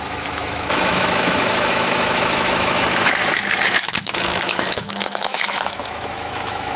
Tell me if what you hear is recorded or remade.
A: remade